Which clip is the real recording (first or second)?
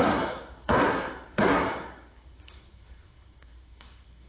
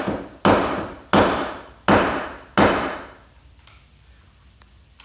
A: second